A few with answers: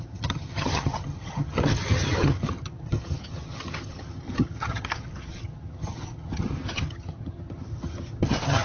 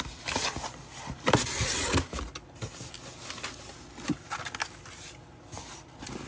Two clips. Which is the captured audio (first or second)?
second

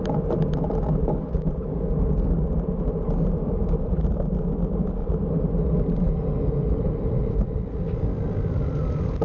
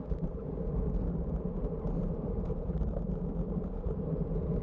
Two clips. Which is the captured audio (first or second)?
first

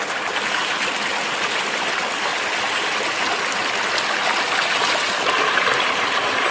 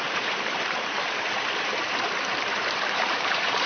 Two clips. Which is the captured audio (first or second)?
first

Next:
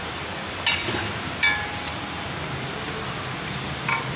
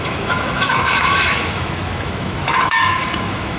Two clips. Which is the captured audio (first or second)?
first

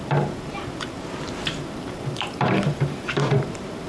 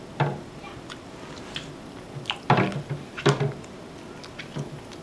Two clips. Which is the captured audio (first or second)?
second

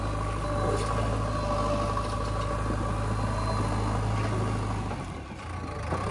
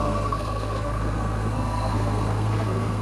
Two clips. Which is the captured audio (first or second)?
first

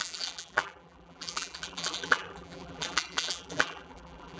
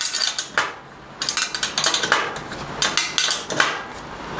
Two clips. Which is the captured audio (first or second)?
second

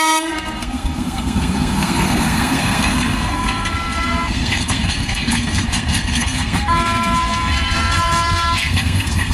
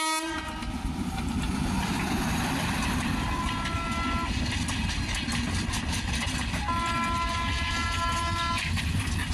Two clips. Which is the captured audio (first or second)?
second